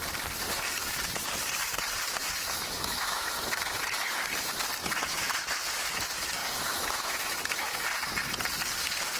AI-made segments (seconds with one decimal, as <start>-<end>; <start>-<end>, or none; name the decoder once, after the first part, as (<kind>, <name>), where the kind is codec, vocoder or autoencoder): 2.2-3.8 (autoencoder, DAC-VAE); 4.8-6.0; 6.4-7.8